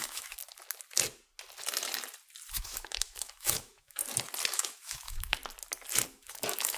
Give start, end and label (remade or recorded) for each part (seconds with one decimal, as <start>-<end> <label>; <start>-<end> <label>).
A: 0.0-0.4 remade; 0.4-2.5 recorded; 2.5-4.0 remade; 4.0-4.5 recorded; 4.5-5.4 remade; 5.4-6.1 recorded; 6.1-6.8 remade